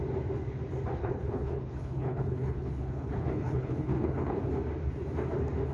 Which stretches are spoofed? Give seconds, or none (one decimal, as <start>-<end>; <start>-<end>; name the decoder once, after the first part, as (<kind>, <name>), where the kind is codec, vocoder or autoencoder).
1.0-4.4 (codec, HILCodec)